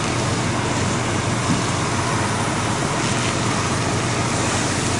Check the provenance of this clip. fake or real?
real